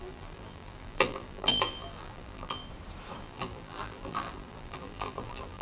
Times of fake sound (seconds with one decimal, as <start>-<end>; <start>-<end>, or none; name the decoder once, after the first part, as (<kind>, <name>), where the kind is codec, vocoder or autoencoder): 0.0-2.6 (vocoder, BigVGAN v2); 3.2-5.6